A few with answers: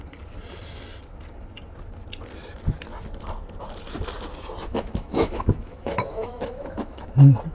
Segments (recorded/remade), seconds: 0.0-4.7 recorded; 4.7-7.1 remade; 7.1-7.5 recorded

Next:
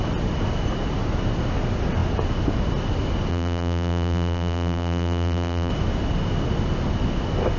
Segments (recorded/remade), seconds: 0.0-3.3 recorded; 3.3-5.7 remade; 5.7-7.6 recorded

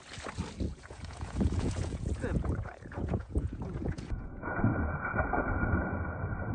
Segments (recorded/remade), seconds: 0.0-0.7 recorded; 0.7-4.6 remade; 4.6-6.5 recorded

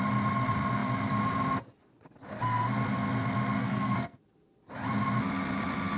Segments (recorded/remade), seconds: 0.0-3.6 recorded; 3.6-4.2 remade; 4.2-6.0 recorded

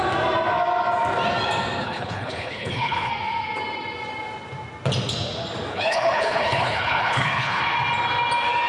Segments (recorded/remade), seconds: 0.0-1.8 recorded; 1.8-3.1 remade; 3.1-5.7 recorded; 5.7-7.6 remade; 7.6-8.7 recorded

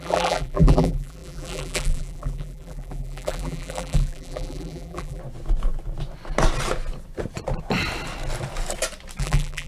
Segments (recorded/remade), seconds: 0.0-5.2 remade; 5.2-9.2 recorded; 9.2-9.7 remade

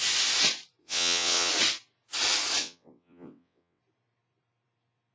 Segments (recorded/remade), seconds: 0.0-0.8 recorded; 0.8-1.5 remade; 1.5-2.6 recorded; 2.6-3.8 remade; 3.8-5.1 recorded

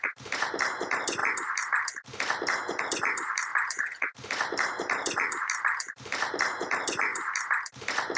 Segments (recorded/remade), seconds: 0.0-1.2 remade; 1.2-2.8 recorded; 2.8-7.1 remade; 7.1-7.7 recorded; 7.7-8.2 remade